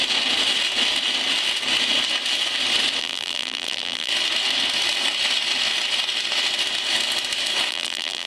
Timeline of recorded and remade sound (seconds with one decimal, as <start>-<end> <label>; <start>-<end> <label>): 0.0-3.0 recorded; 3.0-4.1 remade; 4.1-7.7 recorded; 7.7-8.3 remade